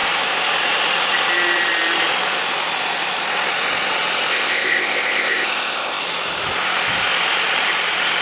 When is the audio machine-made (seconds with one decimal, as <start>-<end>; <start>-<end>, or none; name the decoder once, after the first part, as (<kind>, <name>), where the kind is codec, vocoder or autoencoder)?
4.3-6.0 (codec, ZipCodec)